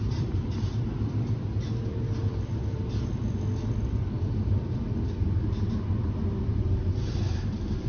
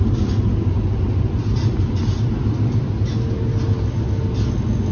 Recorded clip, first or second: second